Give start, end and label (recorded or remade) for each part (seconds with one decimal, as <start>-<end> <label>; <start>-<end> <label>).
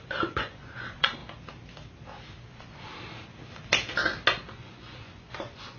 0.0-1.2 remade; 1.2-2.5 recorded; 2.5-2.9 remade; 2.9-4.4 recorded; 4.4-5.8 remade